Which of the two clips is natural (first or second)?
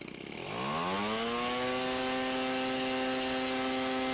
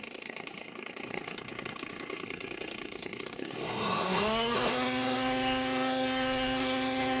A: first